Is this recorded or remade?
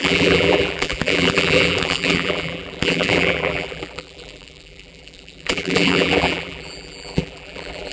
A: remade